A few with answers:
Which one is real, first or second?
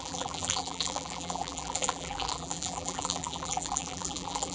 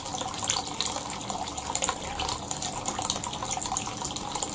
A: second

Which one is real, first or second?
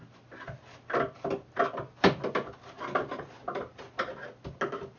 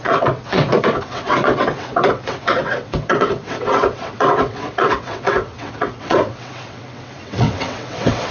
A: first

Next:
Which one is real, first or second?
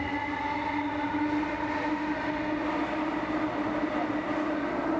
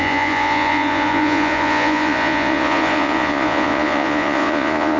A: first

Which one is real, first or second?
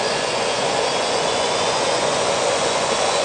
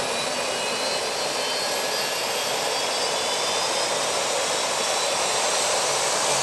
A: second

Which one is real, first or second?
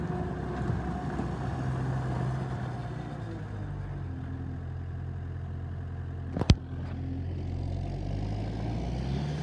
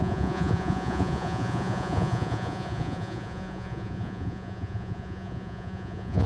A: first